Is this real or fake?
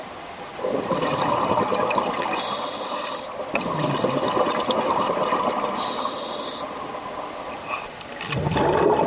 real